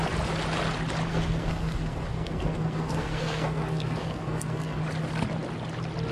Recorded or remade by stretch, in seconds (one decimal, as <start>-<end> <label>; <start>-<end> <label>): 0.0-1.1 recorded; 1.1-4.8 remade; 4.8-6.1 recorded